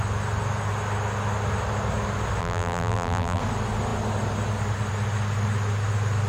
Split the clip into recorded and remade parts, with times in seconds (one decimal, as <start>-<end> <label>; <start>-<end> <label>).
0.0-2.4 recorded; 2.4-3.4 remade; 3.4-6.3 recorded